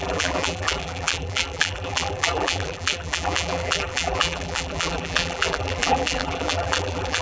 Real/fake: fake